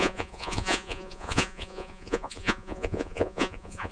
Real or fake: fake